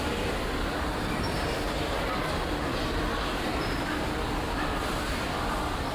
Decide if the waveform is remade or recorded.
recorded